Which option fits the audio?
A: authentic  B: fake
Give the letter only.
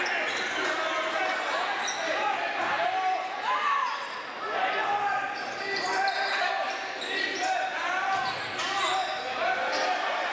A